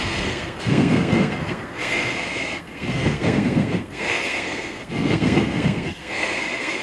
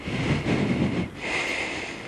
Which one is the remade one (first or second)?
first